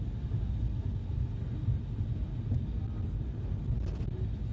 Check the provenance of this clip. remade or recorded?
recorded